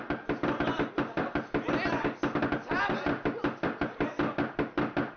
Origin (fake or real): real